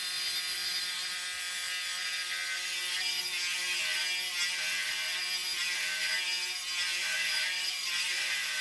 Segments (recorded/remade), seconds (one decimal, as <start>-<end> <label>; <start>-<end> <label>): 0.0-7.0 recorded; 7.0-8.6 remade